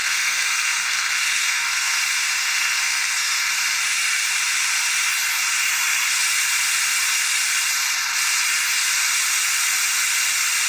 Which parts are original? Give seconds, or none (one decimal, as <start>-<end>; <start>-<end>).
2.0-2.4; 3.5-10.7